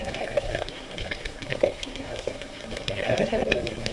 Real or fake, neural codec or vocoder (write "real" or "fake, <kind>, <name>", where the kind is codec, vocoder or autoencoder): fake, codec, SNAC